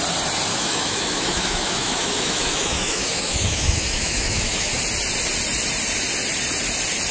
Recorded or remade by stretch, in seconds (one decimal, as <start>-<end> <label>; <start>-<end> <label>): 0.0-0.5 recorded; 0.5-4.8 remade; 4.8-7.1 recorded